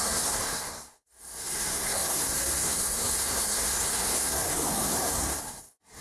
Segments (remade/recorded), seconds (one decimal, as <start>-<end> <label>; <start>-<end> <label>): 0.0-6.0 remade